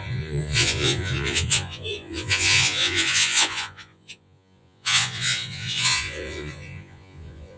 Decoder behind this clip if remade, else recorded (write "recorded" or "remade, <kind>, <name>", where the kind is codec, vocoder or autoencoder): remade, vocoder, Vocos